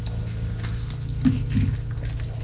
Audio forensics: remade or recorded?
recorded